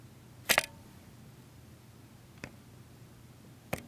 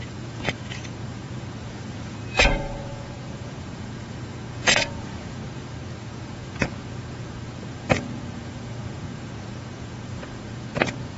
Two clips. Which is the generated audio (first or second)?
second